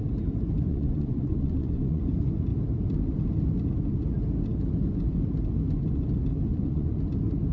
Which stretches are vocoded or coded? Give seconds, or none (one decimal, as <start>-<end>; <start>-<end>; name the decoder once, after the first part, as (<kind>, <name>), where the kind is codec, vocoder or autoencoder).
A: 0.6-2.0 (vocoder, Vocos); 6.5-7.0